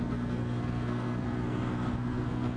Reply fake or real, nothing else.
fake